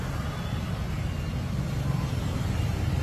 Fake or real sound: real